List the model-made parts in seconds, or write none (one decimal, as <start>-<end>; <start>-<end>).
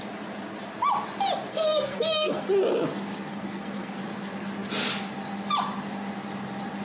1.5-2.5; 3.3-4.0